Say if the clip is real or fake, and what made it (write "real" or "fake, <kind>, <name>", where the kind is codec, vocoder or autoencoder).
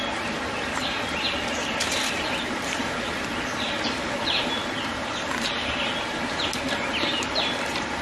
real